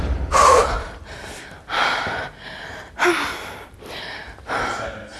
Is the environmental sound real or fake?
real